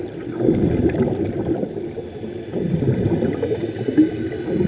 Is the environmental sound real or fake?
real